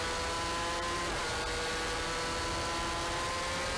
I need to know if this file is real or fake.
real